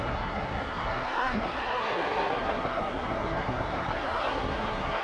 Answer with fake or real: fake